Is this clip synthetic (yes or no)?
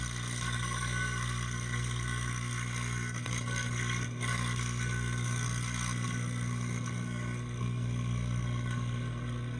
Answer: yes